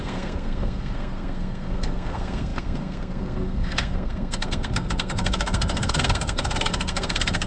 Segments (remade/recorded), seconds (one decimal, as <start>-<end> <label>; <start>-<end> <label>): 0.0-7.5 remade

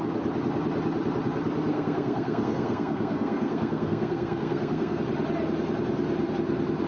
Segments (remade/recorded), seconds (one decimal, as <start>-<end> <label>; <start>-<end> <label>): 0.0-1.7 recorded; 1.7-5.0 remade; 5.0-6.9 recorded

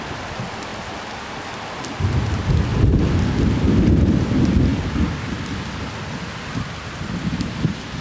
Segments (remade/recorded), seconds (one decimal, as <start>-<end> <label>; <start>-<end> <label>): 0.0-8.0 recorded

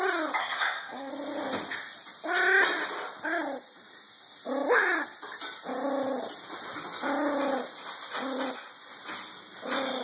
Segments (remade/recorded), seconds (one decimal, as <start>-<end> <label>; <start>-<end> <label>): 0.0-0.4 recorded; 0.4-1.1 remade; 1.1-10.0 recorded

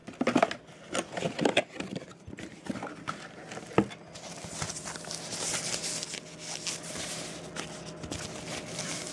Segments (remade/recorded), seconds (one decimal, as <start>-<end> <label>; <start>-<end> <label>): 0.0-9.1 recorded